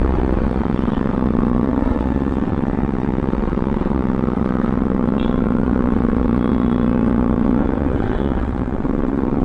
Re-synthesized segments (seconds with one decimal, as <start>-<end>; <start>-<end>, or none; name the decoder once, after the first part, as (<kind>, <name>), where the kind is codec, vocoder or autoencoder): 0.0-9.4 (vocoder, WaveNeXt)